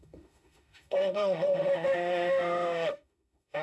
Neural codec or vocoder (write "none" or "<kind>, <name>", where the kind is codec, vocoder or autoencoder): autoencoder, DAC-VAE